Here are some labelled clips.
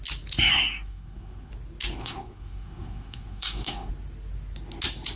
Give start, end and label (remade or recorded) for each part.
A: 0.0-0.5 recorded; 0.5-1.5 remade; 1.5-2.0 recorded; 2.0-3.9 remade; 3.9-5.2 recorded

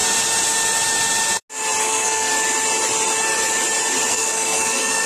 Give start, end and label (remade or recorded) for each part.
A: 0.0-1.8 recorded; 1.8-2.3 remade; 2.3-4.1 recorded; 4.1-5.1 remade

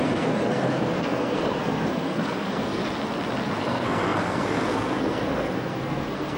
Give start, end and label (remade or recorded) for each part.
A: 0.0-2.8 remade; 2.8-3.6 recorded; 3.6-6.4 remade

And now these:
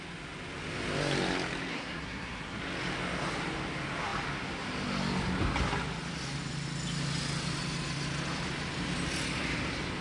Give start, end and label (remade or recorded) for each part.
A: 0.0-1.7 recorded; 1.7-2.6 remade; 2.6-10.0 recorded